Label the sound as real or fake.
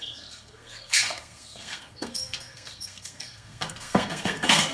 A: fake